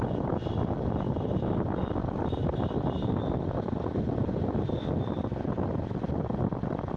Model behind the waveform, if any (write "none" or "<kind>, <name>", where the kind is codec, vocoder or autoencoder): none